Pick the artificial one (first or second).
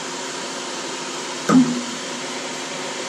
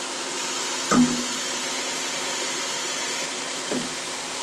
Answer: first